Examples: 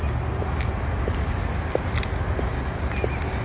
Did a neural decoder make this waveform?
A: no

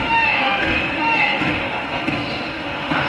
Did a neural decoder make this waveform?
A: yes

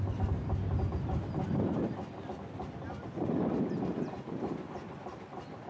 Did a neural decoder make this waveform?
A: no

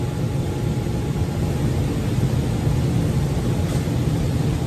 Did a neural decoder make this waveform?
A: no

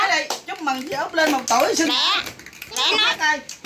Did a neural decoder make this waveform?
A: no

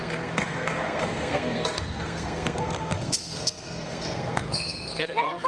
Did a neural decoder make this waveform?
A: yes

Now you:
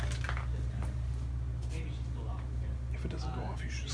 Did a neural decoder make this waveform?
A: no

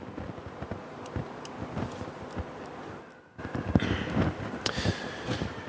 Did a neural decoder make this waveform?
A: no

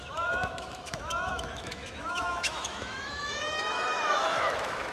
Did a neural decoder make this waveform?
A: yes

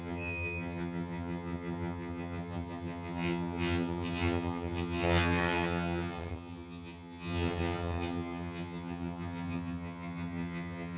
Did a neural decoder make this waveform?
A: yes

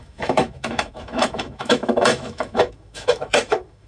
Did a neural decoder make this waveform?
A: yes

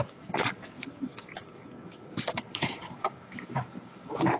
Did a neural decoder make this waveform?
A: yes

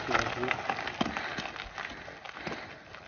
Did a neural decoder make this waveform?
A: no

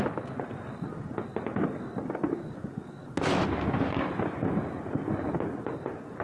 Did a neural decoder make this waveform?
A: no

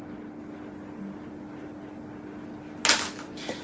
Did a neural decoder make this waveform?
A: no